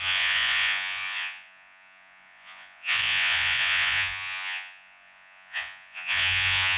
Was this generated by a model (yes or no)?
yes